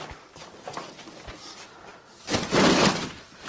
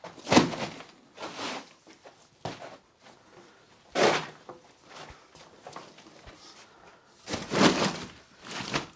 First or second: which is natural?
second